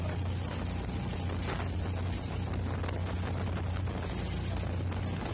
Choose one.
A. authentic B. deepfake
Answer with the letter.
A